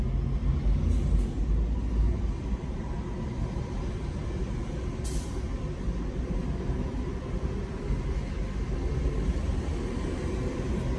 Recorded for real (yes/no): yes